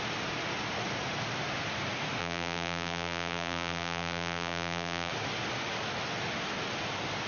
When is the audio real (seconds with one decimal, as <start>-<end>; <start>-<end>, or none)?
0.0-2.2; 5.1-7.3